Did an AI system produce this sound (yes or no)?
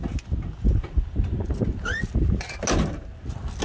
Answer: no